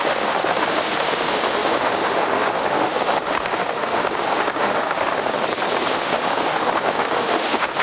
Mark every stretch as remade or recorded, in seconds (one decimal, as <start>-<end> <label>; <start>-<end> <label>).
0.0-5.4 remade; 5.4-5.9 recorded; 5.9-7.8 remade